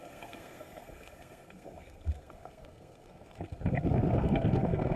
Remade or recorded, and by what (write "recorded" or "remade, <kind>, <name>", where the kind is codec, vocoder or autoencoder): remade, codec, SNAC